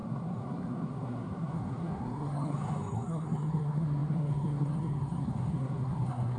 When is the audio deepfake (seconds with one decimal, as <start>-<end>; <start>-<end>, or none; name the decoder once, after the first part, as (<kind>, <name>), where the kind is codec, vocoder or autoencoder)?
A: 0.0-6.4 (codec, SNAC)